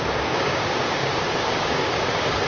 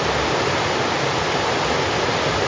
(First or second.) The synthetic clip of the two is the first